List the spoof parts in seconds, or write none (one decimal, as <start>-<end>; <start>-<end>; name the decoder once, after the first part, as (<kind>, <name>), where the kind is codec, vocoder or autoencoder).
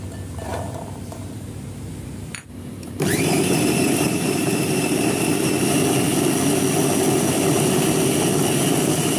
0.5-5.5 (vocoder, BigVGAN v2)